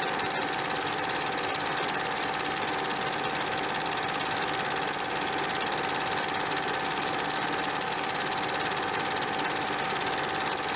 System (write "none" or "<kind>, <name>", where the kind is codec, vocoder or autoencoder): none